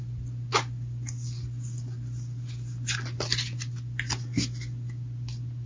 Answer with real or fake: real